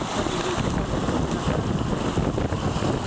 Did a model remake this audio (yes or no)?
no